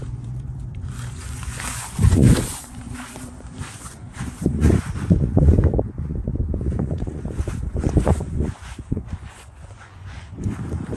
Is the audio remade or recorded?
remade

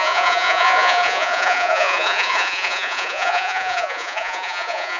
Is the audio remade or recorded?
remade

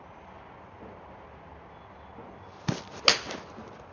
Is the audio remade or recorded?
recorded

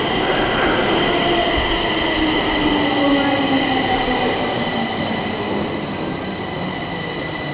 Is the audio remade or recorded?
recorded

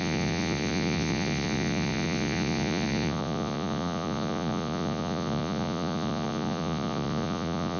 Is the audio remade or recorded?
remade